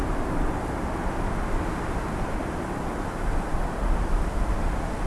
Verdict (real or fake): real